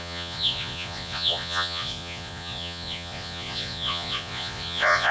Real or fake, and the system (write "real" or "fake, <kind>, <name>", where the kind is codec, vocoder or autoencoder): fake, vocoder, Vocos